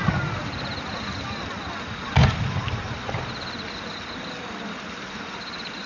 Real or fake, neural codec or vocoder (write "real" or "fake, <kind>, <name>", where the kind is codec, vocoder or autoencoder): real